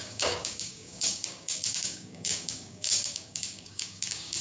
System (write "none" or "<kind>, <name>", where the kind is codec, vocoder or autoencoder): codec, DAC